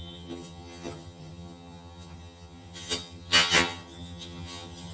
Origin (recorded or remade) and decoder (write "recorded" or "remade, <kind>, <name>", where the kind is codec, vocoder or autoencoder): remade, vocoder, HiFi-GAN